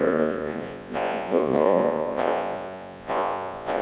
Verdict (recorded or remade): remade